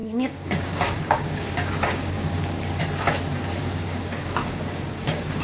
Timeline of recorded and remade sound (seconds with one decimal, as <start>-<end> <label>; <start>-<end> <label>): 0.0-2.8 remade; 2.8-3.6 recorded; 3.6-5.4 remade